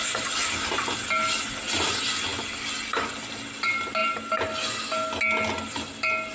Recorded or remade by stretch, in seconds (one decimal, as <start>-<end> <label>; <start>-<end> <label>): 0.0-6.3 recorded